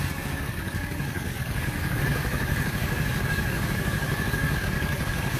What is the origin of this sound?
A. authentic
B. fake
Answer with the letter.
B